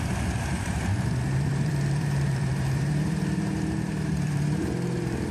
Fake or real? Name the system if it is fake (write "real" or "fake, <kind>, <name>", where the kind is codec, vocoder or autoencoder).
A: fake, vocoder, BigVGAN v2